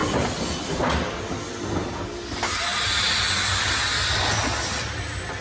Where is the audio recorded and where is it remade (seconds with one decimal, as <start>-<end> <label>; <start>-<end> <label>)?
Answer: 0.0-5.4 recorded